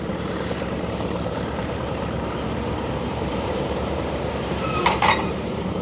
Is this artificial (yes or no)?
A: yes